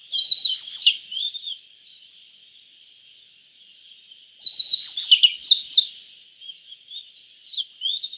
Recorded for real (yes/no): yes